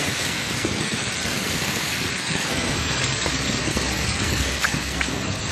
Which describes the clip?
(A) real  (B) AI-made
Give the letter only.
B